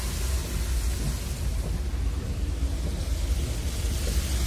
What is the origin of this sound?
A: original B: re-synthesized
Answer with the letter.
A